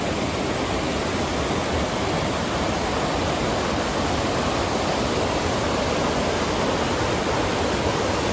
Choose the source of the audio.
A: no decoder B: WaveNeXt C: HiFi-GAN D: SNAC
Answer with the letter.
A